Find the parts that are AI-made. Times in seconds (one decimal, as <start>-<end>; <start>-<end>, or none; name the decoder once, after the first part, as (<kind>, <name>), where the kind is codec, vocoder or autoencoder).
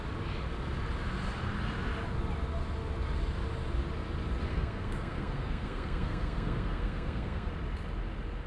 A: 4.5-7.5 (codec, SNAC)